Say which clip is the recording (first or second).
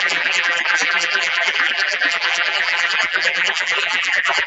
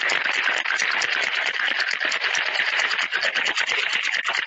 second